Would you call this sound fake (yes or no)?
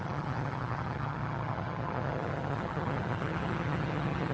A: yes